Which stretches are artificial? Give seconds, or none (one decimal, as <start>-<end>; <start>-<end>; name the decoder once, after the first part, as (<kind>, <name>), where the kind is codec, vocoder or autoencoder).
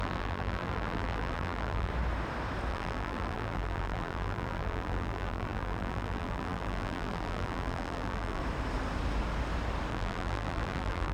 0.0-1.9 (vocoder, BigVGAN v2); 2.7-8.4; 9.9-11.1